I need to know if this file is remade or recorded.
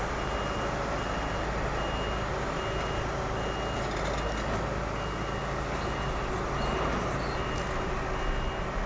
recorded